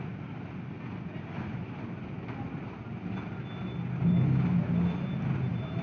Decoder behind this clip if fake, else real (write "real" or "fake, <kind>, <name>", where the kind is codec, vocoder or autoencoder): real